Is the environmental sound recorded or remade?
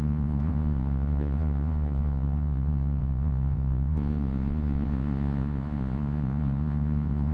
remade